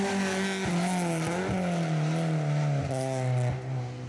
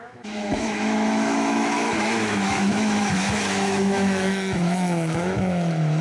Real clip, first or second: first